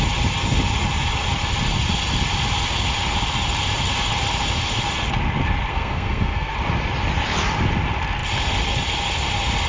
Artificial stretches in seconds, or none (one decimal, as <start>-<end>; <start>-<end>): 5.7-6.5